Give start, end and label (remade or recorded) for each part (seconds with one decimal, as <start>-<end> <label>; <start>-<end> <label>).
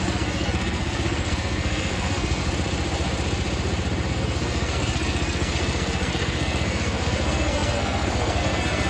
0.0-2.4 remade; 2.4-4.1 recorded; 4.1-8.9 remade